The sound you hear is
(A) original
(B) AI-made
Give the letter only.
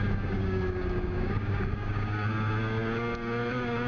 B